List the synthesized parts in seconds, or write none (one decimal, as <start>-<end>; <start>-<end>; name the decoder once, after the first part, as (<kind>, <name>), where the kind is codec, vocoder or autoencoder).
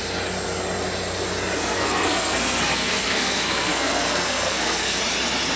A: 1.6-5.0 (codec, SNAC)